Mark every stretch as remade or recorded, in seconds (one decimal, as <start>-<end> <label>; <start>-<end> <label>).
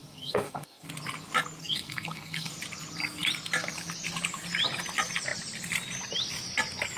0.0-0.9 remade; 0.9-1.6 recorded; 1.6-2.5 remade; 2.5-7.0 recorded